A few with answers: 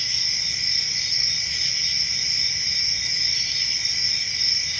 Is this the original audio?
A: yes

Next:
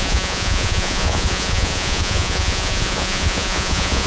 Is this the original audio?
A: no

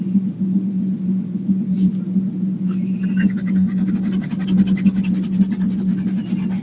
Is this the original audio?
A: yes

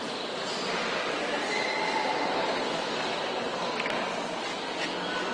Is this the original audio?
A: yes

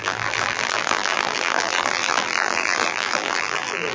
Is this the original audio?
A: no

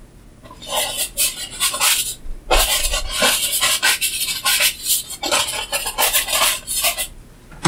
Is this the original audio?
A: yes